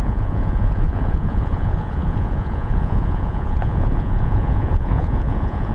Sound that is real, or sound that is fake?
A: fake